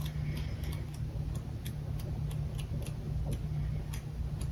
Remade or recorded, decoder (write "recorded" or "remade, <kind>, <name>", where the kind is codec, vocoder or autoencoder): recorded